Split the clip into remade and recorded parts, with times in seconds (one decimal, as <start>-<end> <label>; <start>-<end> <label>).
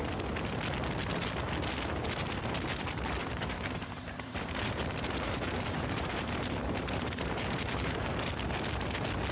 0.0-3.2 recorded; 3.2-8.3 remade; 8.3-9.3 recorded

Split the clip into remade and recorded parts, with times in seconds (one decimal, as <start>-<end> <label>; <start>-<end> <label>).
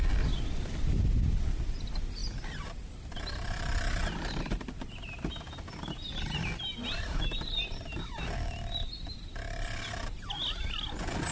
0.0-2.2 recorded; 2.2-6.2 remade; 6.2-6.8 recorded; 6.8-7.8 remade; 7.8-11.3 recorded